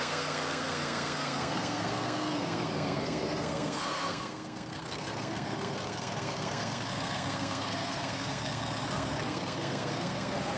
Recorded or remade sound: remade